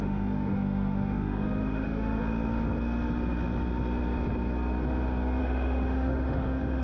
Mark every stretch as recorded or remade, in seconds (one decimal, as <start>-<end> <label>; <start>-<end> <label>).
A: 0.0-2.2 remade; 2.2-5.4 recorded; 5.4-6.8 remade